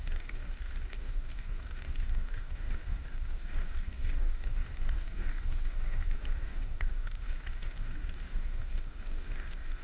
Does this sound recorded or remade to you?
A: remade